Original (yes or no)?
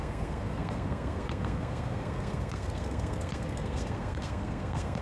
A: no